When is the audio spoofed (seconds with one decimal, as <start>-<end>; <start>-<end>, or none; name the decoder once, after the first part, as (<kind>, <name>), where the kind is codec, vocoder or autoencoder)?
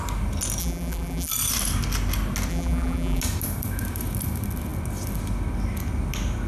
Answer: 0.6-1.3 (vocoder, BigVGAN v2); 2.5-3.2